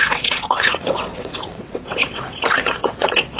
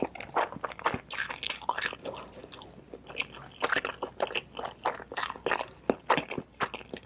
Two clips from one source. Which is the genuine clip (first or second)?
second